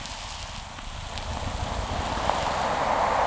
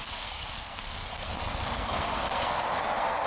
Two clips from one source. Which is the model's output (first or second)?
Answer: second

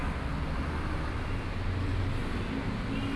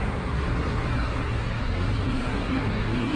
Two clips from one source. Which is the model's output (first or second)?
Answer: second